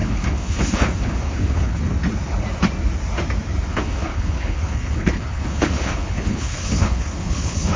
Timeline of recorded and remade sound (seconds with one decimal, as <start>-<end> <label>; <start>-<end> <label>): 0.0-1.8 remade; 1.8-3.7 recorded; 3.7-7.8 remade